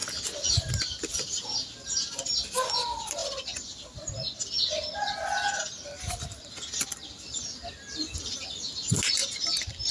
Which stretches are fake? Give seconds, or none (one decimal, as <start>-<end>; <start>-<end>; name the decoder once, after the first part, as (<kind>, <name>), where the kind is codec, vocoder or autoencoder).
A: none